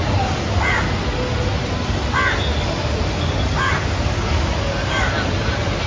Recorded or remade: recorded